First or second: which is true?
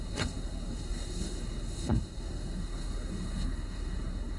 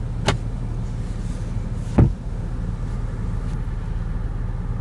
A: second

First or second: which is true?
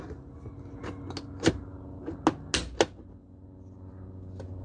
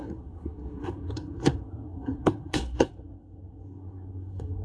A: first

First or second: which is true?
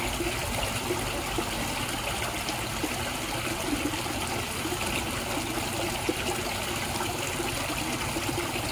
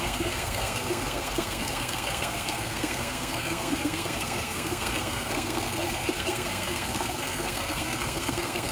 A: first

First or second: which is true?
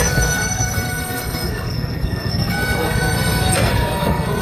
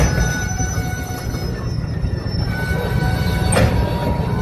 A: second